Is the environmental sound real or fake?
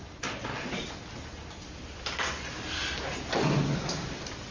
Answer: real